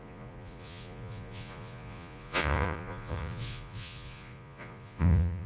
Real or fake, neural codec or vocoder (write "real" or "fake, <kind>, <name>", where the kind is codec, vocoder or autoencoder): fake, vocoder, Vocos